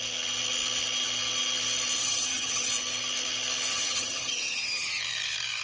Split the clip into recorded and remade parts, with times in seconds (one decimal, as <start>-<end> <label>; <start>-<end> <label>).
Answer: 0.0-2.0 recorded; 2.0-2.7 remade; 2.7-3.7 recorded; 3.7-5.0 remade; 5.0-5.6 recorded